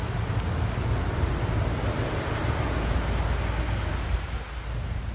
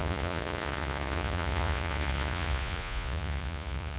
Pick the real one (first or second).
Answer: first